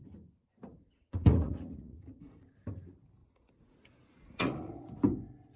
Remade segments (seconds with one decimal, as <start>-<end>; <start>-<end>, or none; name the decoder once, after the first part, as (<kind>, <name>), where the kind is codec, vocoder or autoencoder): 0.7-2.4 (vocoder, Vocos); 3.2-4.9